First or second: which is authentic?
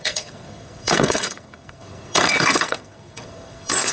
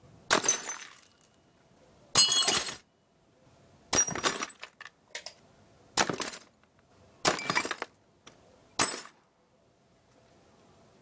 second